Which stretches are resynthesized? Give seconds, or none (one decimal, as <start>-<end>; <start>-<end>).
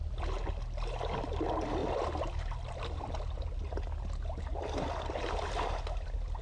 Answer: none